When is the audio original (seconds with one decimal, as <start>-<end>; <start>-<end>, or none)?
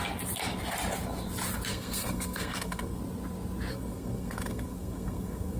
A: 0.0-1.7; 3.0-3.7